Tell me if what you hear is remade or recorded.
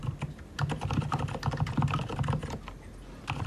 recorded